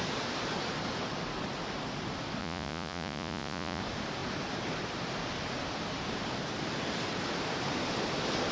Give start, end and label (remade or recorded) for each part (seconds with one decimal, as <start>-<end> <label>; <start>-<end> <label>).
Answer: 0.0-2.4 recorded; 2.4-3.8 remade; 3.8-8.5 recorded